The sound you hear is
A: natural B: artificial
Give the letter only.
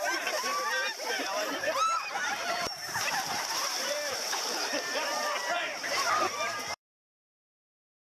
B